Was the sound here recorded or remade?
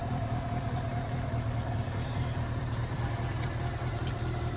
remade